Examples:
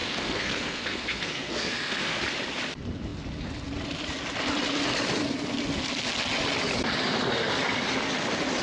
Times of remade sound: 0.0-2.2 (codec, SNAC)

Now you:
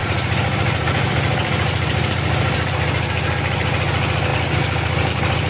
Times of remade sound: 0.0-2.7 (vocoder, BigVGAN v2)

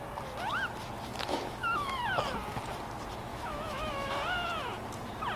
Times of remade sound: 1.1-2.2 (autoencoder, DAC-VAE); 3.3-4.1